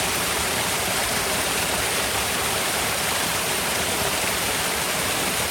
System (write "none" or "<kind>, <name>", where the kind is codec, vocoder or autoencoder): vocoder, BigVGAN v2